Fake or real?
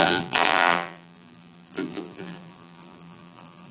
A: fake